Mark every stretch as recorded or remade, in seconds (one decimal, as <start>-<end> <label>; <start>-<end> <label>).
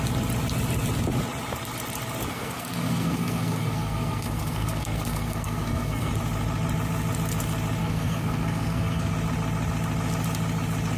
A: 0.0-2.3 recorded; 2.3-6.1 remade; 6.1-7.8 recorded; 7.8-9.1 remade; 9.1-11.0 recorded